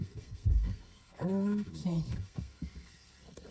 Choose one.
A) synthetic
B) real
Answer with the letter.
A